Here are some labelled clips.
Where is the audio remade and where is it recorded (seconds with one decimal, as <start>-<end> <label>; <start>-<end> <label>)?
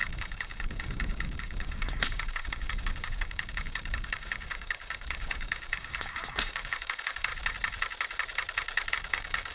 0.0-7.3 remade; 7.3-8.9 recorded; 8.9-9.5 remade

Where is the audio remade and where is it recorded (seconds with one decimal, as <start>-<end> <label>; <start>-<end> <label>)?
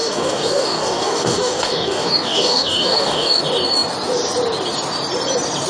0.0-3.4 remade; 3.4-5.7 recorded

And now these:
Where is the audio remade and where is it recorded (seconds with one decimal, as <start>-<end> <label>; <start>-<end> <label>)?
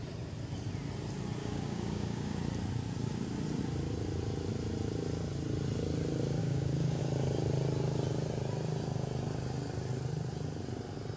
0.0-1.4 recorded; 1.4-2.4 remade; 2.4-6.4 recorded; 6.4-7.0 remade; 7.0-11.2 recorded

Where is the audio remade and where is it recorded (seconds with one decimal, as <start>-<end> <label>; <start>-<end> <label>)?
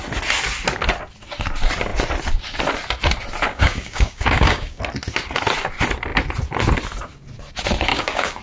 0.0-3.5 recorded; 3.5-4.8 remade; 4.8-7.9 recorded; 7.9-8.4 remade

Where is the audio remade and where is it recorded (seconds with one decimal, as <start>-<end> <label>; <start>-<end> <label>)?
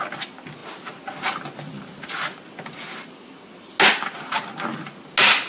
0.0-5.5 recorded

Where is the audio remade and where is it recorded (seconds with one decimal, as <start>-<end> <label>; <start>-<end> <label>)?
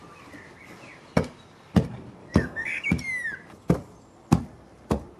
0.0-2.2 recorded; 2.2-2.9 remade; 2.9-5.2 recorded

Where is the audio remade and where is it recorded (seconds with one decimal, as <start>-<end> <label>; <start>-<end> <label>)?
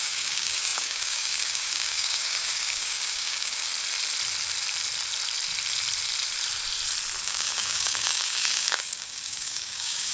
0.0-3.7 remade; 3.7-7.2 recorded; 7.2-10.1 remade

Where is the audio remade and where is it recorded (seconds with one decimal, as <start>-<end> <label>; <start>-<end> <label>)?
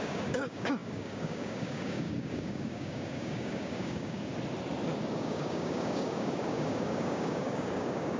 0.0-4.3 remade; 4.3-5.1 recorded; 5.1-8.2 remade